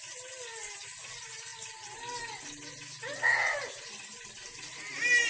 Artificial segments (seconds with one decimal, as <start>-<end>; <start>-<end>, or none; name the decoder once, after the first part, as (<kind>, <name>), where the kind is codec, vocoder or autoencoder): none